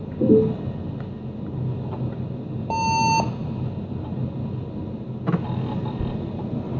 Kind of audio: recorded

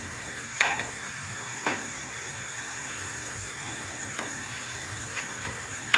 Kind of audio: remade